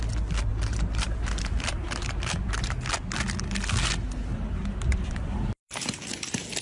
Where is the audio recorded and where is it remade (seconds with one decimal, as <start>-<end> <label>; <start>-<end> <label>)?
0.0-0.5 recorded; 0.5-2.8 remade; 2.8-4.3 recorded; 4.3-6.0 remade; 6.0-6.6 recorded